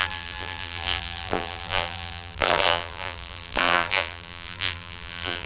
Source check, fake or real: fake